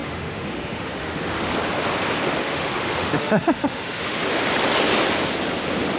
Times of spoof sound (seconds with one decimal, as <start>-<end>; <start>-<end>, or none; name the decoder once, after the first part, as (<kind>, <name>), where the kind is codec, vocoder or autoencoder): 0.0-1.5 (autoencoder, DAC-VAE); 2.4-4.2